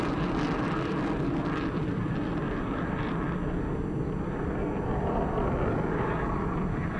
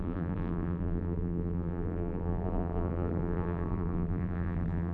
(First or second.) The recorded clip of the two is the first